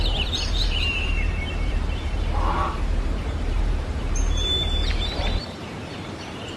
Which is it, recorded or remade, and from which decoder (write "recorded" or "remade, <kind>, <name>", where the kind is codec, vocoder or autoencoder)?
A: remade, vocoder, BigVGAN v2